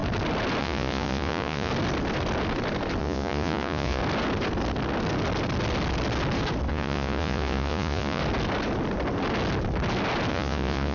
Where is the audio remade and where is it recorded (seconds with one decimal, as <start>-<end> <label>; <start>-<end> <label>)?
0.0-0.6 recorded; 0.6-1.7 remade; 1.7-3.0 recorded; 3.0-4.0 remade; 4.0-6.7 recorded; 6.7-8.2 remade; 8.2-10.3 recorded; 10.3-10.9 remade